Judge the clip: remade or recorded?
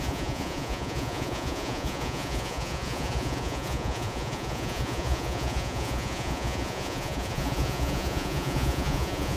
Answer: remade